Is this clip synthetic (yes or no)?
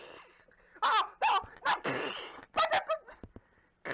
no